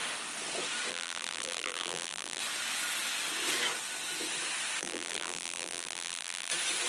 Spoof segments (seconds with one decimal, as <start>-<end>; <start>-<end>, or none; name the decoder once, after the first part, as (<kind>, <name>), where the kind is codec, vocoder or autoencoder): 0.9-2.4 (vocoder, BigVGAN v2); 4.8-6.5